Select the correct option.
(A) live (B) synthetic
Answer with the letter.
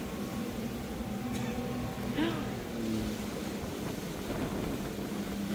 A